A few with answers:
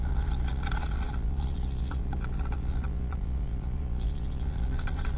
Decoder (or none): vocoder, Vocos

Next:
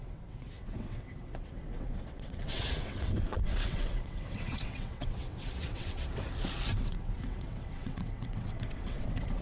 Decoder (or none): vocoder, WaveNeXt